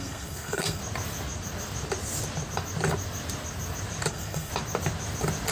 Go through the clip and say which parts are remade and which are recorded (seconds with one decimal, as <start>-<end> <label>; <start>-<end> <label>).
0.0-0.8 remade; 0.8-4.1 recorded; 4.1-4.5 remade; 4.5-5.5 recorded